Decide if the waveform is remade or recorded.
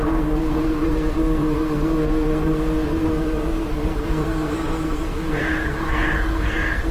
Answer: remade